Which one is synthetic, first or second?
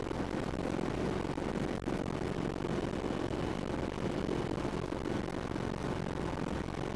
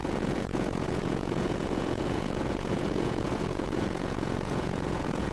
second